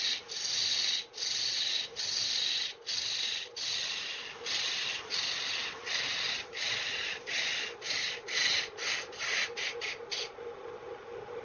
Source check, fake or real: real